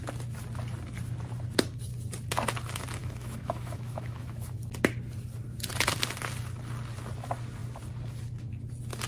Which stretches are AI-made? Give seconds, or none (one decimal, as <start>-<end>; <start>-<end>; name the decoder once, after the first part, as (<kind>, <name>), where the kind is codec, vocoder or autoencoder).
3.0-4.6 (autoencoder, DAC-VAE)